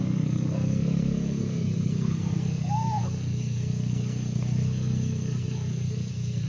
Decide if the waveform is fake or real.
fake